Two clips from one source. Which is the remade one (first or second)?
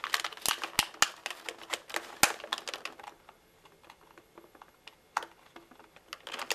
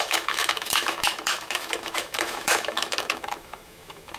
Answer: second